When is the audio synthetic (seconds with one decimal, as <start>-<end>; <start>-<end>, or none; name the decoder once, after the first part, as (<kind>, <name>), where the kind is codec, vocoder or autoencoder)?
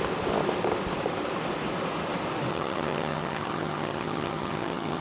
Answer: 2.5-5.0 (vocoder, HiFi-GAN)